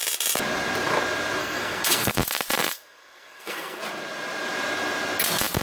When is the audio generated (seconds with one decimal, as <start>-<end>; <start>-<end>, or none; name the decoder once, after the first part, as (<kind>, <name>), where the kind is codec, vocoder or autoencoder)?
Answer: 1.4-2.1 (codec, SNAC); 2.6-3.8